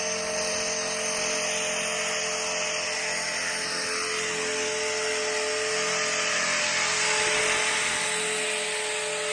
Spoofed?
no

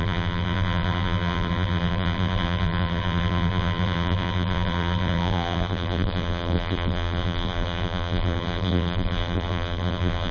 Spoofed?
yes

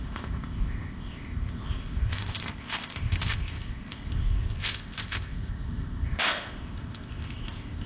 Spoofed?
yes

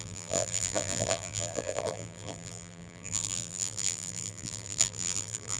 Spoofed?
yes